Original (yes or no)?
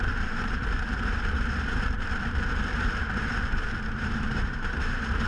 no